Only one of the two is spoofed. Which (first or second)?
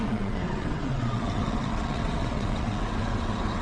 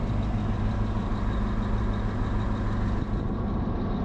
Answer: first